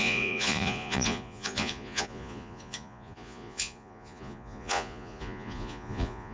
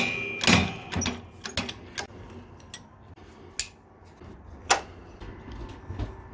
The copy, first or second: first